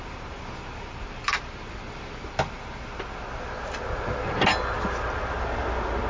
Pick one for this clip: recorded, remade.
recorded